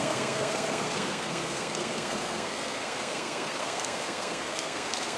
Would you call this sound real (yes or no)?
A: no